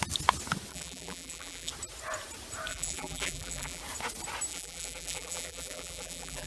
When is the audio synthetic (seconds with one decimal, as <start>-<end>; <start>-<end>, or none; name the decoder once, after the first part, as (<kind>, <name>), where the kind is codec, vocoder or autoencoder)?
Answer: 0.7-1.7 (vocoder, BigVGAN v2); 2.7-3.8; 4.5-6.5